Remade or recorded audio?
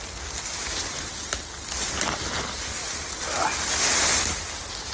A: recorded